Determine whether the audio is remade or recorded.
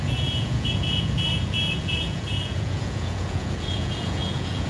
remade